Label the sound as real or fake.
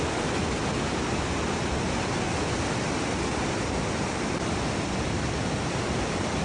fake